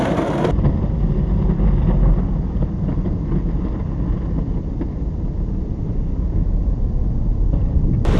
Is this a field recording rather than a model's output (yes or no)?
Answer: yes